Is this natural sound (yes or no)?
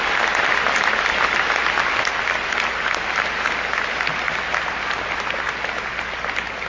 yes